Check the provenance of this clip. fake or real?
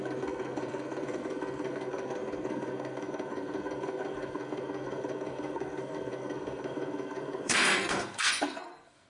fake